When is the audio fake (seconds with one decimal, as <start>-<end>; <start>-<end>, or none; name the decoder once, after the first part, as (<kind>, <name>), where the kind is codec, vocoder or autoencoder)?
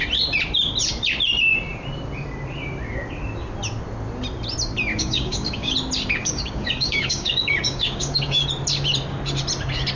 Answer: 4.9-5.7 (codec, DAC); 6.2-8.4